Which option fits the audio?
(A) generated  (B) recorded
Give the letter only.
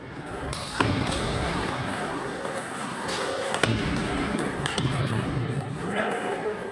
A